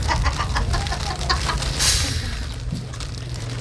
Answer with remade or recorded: recorded